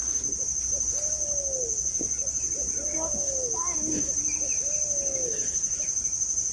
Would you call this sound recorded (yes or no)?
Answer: yes